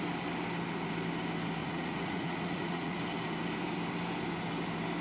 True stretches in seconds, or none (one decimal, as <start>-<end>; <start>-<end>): 0.0-1.6; 3.0-5.0